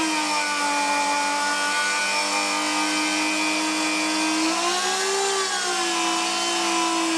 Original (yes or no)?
yes